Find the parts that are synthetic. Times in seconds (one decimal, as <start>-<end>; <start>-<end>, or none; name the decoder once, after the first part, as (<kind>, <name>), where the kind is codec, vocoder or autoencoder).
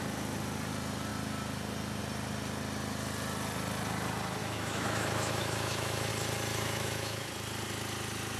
4.4-6.1 (autoencoder, DAC-VAE); 6.5-7.3